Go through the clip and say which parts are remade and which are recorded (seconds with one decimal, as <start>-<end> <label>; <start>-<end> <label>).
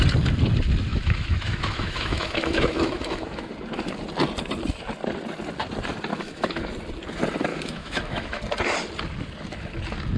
0.0-0.9 recorded; 0.9-3.5 remade; 3.5-6.1 recorded; 6.1-6.7 remade; 6.7-7.5 recorded; 7.5-8.4 remade; 8.4-10.2 recorded